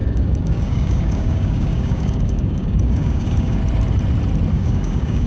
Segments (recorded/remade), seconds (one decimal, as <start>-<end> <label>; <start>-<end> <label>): 0.0-3.6 remade; 3.6-4.5 recorded; 4.5-5.3 remade